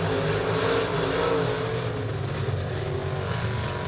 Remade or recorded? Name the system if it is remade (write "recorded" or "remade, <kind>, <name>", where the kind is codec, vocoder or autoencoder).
recorded